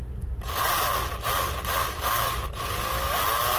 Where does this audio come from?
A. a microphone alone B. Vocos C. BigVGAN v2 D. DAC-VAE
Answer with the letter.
A